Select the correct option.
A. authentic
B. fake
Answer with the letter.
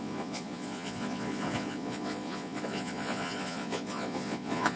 B